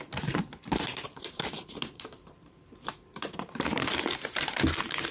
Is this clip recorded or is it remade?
remade